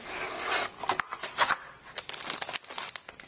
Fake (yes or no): no